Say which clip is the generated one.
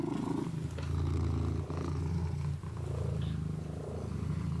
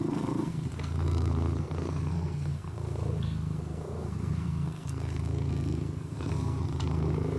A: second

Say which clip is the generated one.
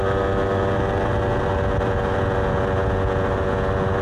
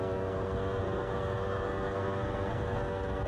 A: second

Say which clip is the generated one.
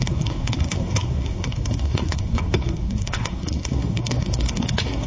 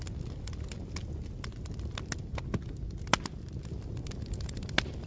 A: first